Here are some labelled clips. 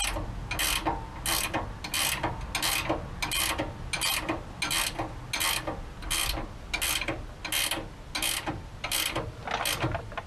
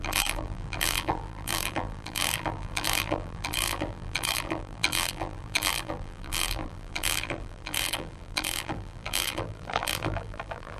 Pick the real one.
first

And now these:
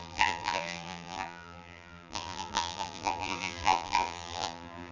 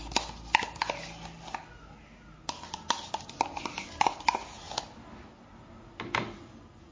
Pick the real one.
second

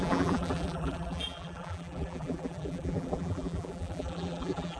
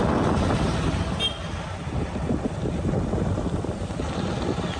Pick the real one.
second